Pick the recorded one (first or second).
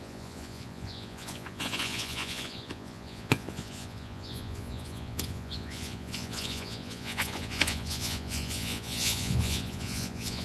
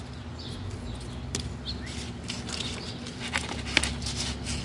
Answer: second